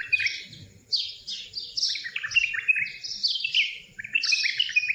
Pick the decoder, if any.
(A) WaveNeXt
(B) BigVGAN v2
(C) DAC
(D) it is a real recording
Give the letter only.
D